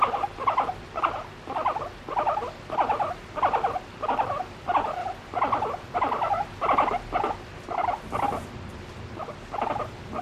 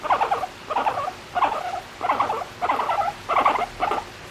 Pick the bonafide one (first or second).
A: second